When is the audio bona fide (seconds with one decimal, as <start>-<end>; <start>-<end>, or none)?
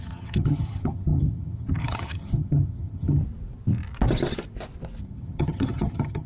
3.2-5.0